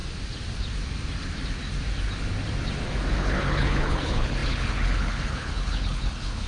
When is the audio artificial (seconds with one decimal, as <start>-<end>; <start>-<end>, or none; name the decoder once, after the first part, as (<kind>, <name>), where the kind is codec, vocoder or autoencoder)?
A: 3.1-6.5 (codec, HILCodec)